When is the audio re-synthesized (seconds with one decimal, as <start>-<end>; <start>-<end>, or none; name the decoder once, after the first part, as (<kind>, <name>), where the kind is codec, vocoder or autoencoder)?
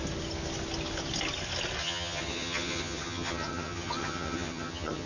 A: 1.8-5.1 (vocoder, HiFi-GAN)